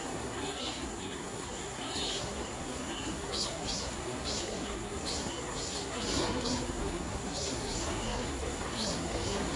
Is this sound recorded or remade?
remade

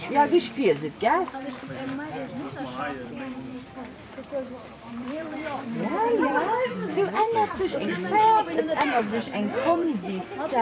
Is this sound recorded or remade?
remade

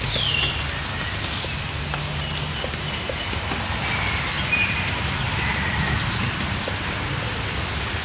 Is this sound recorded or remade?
recorded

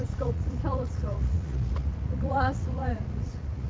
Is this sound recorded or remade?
remade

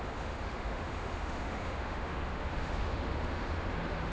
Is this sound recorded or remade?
remade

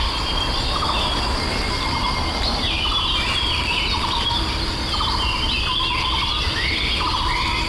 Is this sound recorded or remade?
recorded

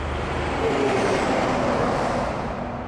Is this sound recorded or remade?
remade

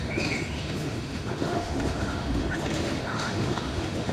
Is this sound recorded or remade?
remade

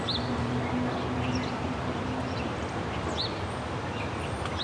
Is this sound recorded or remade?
recorded